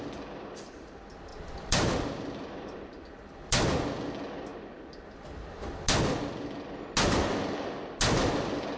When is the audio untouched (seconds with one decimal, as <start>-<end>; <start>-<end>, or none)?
0.0-1.3; 2.9-8.8